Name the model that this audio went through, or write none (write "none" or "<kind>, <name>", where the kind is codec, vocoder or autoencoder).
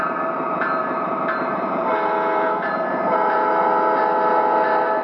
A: vocoder, BigVGAN v2